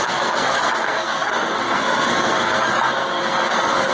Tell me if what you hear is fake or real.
fake